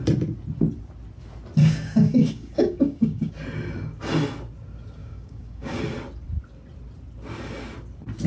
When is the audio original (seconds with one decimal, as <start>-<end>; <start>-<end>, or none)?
0.0-1.6; 3.3-5.0; 5.8-8.3

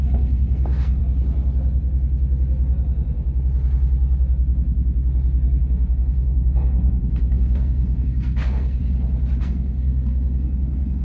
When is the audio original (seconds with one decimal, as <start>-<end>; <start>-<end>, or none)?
1.0-5.6; 8.8-9.4